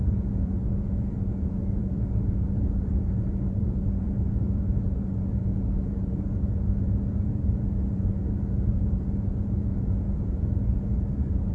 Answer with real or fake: fake